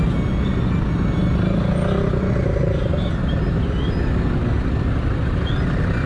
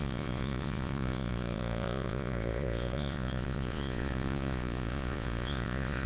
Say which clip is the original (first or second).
first